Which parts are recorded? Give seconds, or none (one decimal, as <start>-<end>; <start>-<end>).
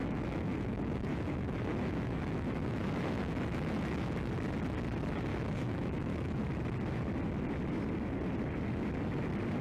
4.3-5.3; 6.4-9.6